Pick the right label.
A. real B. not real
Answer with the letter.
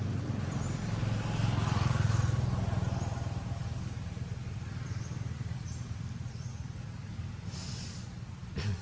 A